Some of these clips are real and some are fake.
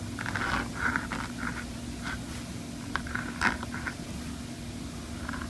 real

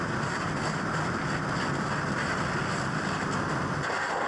real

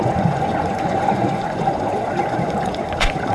fake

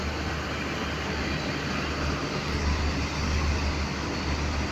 real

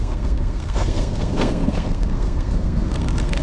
fake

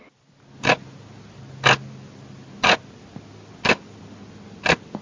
real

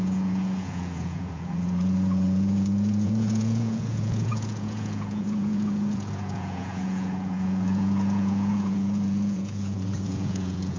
fake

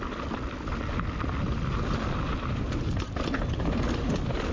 real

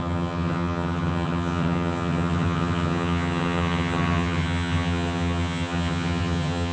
fake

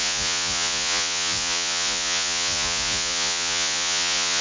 fake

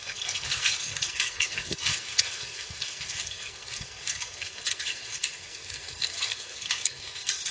fake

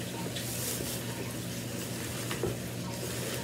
real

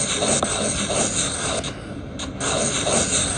real